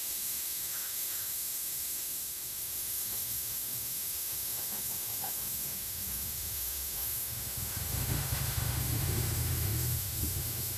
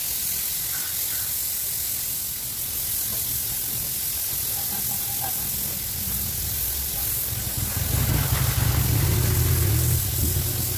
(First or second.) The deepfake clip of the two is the first